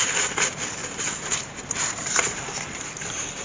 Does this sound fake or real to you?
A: fake